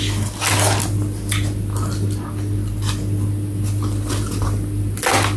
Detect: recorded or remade recorded